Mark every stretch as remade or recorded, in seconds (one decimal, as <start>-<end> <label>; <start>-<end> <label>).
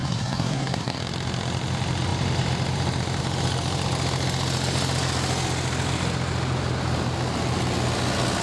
0.0-1.0 remade; 1.0-8.4 recorded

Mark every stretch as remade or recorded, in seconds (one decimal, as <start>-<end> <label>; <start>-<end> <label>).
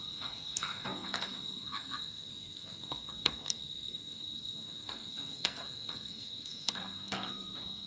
0.0-7.9 remade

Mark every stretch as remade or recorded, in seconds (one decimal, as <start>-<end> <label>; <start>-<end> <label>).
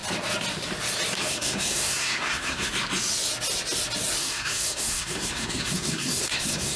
0.0-1.2 recorded; 1.2-2.7 remade; 2.7-4.2 recorded; 4.2-6.8 remade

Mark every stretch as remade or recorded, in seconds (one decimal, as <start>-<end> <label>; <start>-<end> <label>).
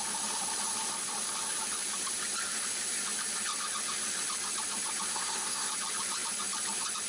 0.0-5.1 recorded; 5.1-5.7 remade; 5.7-7.1 recorded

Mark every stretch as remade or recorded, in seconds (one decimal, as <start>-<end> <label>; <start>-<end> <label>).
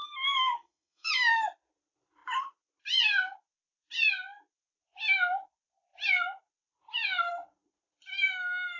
0.0-1.1 remade; 1.1-8.8 recorded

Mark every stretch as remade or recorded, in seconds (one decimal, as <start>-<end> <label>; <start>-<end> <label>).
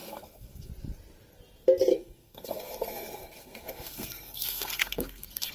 0.0-0.7 remade; 0.7-1.9 recorded; 1.9-5.5 remade